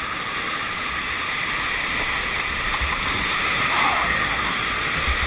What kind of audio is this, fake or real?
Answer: real